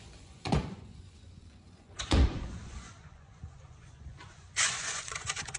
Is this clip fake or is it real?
fake